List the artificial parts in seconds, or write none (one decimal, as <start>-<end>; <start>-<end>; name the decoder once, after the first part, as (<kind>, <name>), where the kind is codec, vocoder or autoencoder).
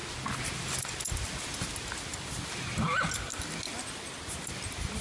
none